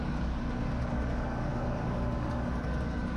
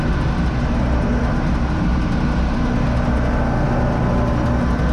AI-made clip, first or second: first